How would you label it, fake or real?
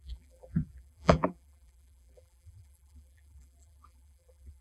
fake